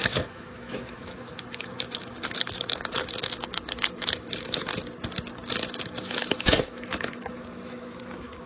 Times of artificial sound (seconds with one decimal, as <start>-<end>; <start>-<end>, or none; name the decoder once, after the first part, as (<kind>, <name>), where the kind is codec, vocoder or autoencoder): 0.0-4.7 (autoencoder, DAC-VAE); 5.6-8.5